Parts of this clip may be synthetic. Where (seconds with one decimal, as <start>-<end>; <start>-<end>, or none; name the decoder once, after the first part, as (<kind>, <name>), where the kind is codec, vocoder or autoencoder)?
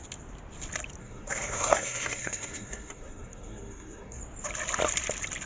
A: 1.0-4.2 (codec, SNAC)